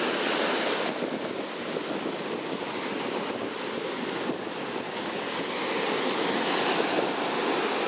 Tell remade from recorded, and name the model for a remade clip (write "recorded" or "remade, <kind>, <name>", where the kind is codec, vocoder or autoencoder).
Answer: recorded